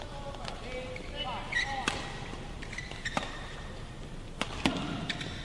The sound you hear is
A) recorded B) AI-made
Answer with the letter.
A